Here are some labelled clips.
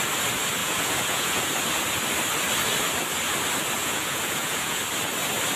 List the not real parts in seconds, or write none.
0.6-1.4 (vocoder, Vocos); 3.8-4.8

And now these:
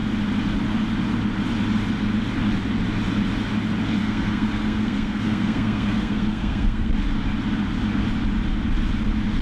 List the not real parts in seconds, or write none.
4.0-6.9 (codec, SNAC)

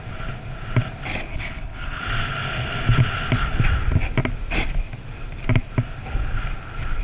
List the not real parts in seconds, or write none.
1.3-2.0 (codec, HILCodec)

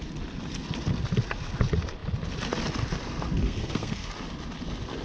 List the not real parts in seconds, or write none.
3.4-4.1 (codec, SNAC)

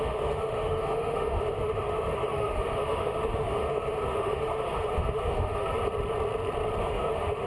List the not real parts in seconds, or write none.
0.0-5.7 (autoencoder, DAC-VAE); 6.8-7.5

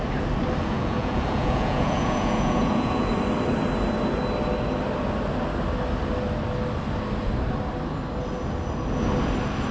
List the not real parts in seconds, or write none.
0.6-3.1 (vocoder, Vocos)

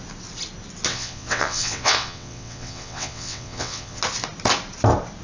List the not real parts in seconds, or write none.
0.9-4.0 (vocoder, WaveNeXt)